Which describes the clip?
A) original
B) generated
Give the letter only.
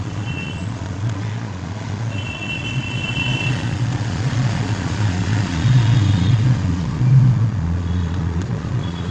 B